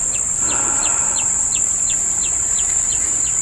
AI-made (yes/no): yes